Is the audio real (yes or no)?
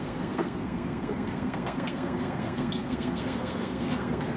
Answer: no